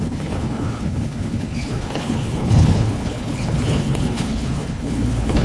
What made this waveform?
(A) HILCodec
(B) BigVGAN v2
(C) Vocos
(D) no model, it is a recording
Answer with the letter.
A